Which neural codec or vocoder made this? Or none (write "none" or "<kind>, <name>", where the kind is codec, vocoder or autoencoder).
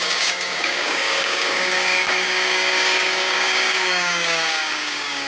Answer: codec, DAC